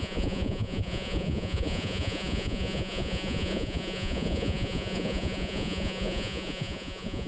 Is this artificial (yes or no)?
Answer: yes